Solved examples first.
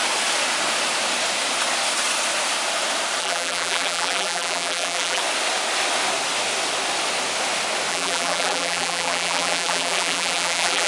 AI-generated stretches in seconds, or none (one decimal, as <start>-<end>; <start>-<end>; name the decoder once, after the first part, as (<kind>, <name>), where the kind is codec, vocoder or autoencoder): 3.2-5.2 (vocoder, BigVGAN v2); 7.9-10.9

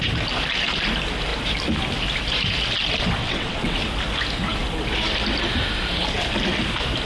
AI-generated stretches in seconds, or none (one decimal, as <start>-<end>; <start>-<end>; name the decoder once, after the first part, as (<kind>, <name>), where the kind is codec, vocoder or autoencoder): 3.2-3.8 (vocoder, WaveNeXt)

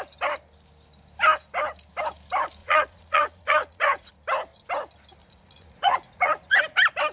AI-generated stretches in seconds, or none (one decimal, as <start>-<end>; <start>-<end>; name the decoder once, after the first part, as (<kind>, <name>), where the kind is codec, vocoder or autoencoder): 2.6-4.1 (vocoder, Vocos); 5.2-6.6

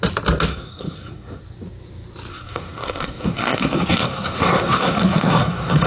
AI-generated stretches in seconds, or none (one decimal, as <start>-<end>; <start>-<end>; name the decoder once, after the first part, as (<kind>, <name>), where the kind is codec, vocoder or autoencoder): 0.5-1.4 (codec, SNAC); 2.3-5.9

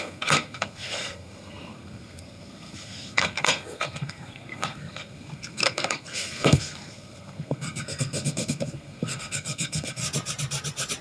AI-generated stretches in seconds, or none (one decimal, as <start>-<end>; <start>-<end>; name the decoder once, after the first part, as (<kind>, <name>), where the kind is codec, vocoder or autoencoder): 0.0-10.0 (codec, SNAC)